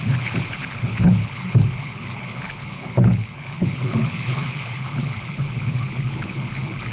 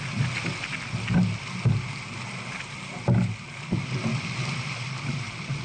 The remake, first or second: first